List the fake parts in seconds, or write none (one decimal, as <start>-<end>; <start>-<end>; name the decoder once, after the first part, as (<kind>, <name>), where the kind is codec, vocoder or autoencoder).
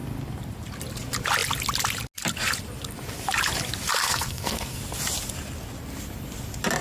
4.0-4.8 (codec, SNAC)